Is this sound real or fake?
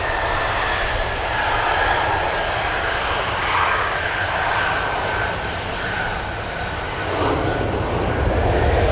real